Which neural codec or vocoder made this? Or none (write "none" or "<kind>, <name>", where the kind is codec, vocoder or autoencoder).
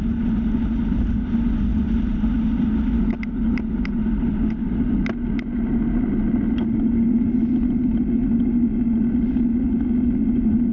none